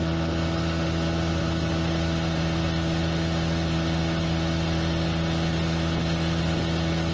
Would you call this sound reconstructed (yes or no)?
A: no